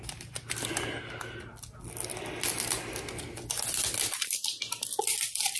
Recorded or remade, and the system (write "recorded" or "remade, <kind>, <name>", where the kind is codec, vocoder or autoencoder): recorded